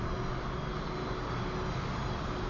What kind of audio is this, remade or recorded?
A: recorded